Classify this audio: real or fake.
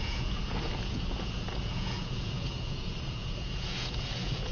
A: fake